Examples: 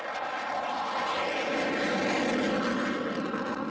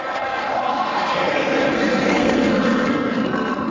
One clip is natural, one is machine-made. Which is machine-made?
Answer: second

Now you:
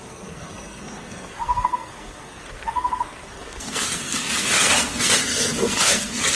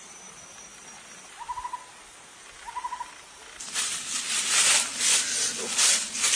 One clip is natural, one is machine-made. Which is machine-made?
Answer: first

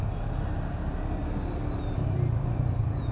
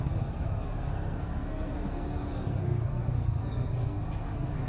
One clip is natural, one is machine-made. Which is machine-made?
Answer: second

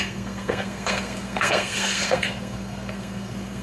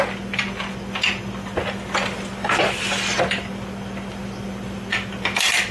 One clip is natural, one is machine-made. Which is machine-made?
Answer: first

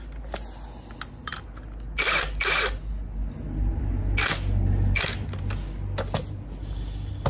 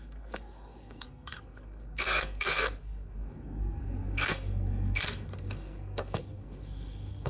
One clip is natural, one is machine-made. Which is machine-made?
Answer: second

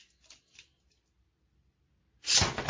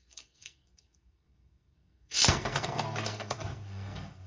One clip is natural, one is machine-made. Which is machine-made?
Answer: second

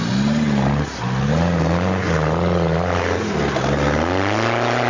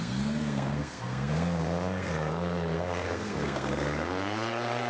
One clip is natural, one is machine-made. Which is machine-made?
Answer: second